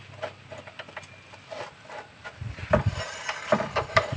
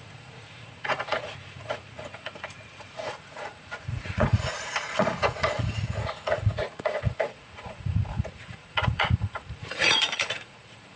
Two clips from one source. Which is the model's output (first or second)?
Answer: second